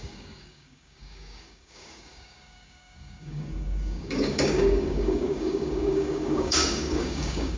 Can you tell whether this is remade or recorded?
remade